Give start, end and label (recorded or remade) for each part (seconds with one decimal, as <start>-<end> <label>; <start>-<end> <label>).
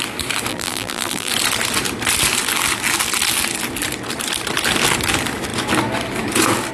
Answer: 0.0-0.5 recorded; 0.5-1.3 remade; 1.3-6.7 recorded